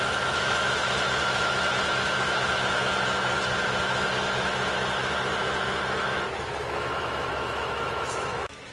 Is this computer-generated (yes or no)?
yes